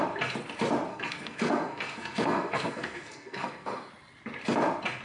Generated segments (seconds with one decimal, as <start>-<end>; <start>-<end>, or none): 0.9-3.9